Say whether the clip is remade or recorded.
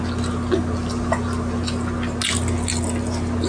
recorded